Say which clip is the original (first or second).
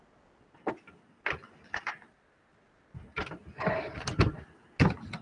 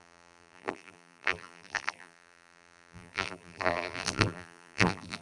first